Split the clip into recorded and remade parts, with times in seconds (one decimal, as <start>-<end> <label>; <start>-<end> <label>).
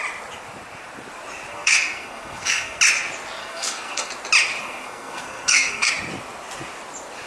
0.0-1.5 recorded; 1.5-2.8 remade; 2.8-3.4 recorded; 3.4-4.1 remade; 4.1-4.6 recorded; 4.6-5.9 remade; 5.9-7.3 recorded